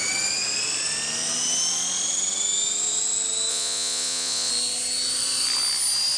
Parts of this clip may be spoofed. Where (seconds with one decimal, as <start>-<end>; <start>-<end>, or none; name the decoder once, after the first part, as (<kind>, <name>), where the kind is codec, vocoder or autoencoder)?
3.5-4.5 (vocoder, Vocos)